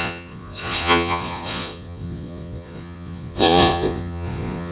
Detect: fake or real fake